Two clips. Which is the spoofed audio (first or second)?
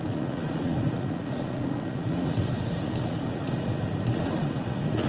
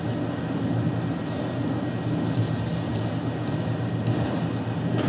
first